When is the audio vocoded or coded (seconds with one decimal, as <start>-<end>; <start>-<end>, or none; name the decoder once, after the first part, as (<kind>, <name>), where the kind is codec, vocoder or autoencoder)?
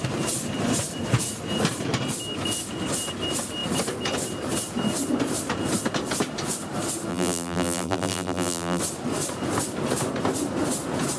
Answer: 7.1-8.8 (vocoder, BigVGAN v2)